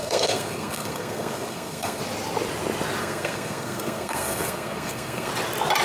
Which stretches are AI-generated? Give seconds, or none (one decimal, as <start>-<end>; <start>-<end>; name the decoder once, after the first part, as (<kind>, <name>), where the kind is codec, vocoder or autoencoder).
0.0-2.0 (codec, SNAC); 3.0-5.3